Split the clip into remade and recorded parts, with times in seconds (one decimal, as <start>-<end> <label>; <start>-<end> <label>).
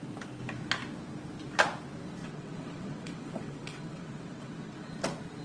0.0-2.2 recorded; 2.2-4.9 remade; 4.9-5.4 recorded